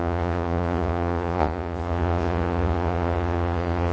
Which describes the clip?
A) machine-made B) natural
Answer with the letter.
A